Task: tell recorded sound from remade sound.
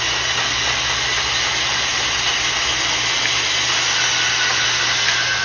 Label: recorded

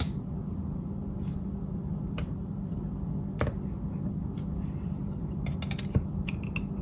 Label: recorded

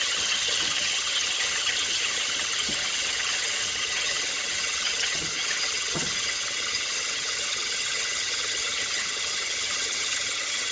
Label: remade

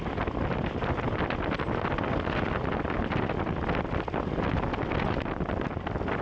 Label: recorded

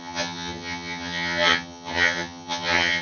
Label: remade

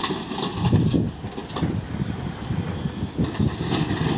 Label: recorded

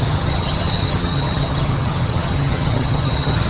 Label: remade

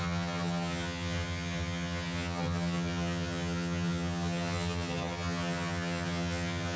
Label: remade